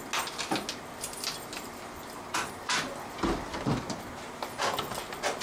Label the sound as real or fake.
real